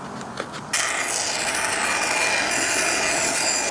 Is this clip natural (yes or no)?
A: yes